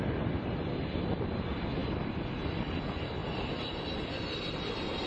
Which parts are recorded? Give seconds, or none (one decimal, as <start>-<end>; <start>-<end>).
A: 0.0-3.2; 3.8-5.1